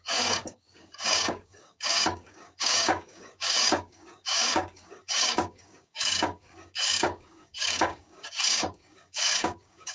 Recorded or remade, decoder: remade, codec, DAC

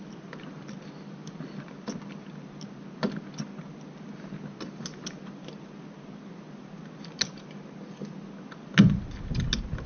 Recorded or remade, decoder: recorded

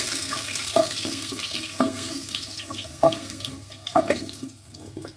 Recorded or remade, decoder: remade, codec, SNAC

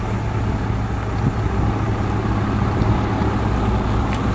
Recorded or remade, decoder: recorded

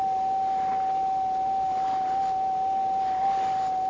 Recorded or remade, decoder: recorded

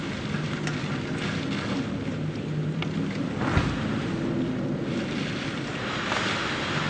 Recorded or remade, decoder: recorded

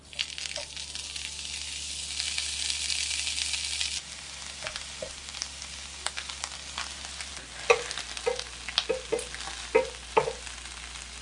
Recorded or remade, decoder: recorded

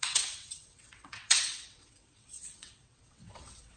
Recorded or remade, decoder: remade, vocoder, WaveNeXt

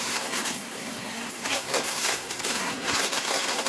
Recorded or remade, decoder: remade, codec, SNAC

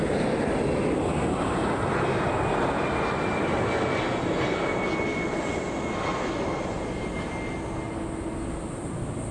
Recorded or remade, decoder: recorded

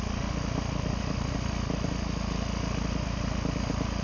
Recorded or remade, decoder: recorded